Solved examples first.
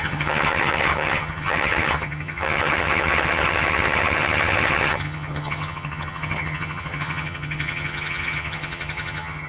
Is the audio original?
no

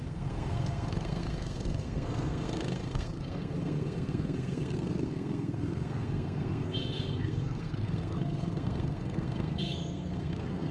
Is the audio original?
no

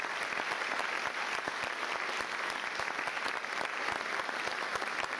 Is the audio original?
yes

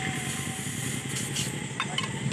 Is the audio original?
yes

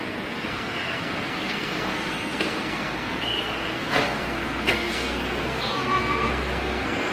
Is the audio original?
no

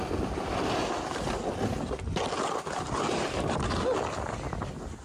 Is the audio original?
yes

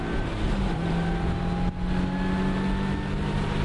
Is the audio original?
yes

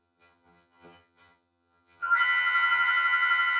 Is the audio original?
no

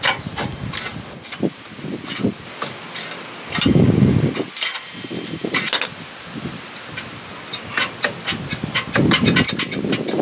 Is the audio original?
no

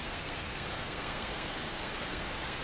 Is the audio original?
no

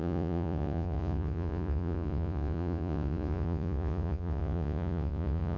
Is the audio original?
no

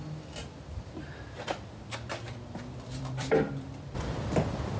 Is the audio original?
no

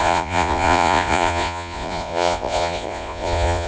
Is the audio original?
no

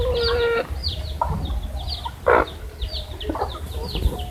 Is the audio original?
no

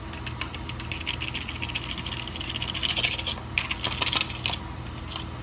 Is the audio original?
yes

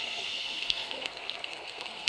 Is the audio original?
no